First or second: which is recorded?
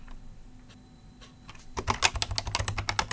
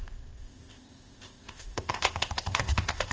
first